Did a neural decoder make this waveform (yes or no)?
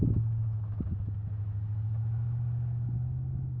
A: no